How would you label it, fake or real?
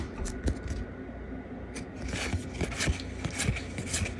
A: real